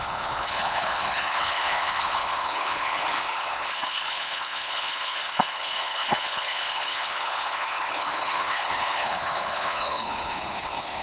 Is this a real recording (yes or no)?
no